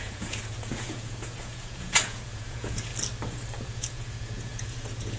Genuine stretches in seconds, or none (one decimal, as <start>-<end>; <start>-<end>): 2.9-3.6